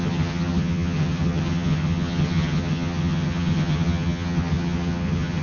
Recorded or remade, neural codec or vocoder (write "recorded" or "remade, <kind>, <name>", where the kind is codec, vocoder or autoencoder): remade, vocoder, HiFi-GAN